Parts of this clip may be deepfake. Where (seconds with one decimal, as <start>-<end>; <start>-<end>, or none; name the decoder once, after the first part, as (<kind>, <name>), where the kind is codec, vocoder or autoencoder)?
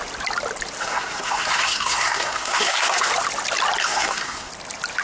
0.8-3.1 (codec, SNAC); 3.8-4.5